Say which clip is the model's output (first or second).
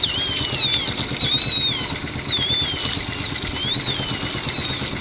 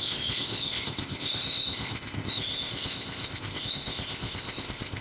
second